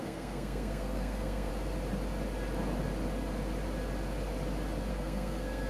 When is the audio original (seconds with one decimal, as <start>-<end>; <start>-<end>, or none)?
1.5-4.9